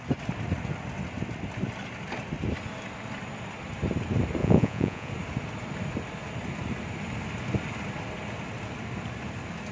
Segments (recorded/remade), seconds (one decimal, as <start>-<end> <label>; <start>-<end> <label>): 0.0-4.4 recorded; 4.4-5.1 remade; 5.1-9.7 recorded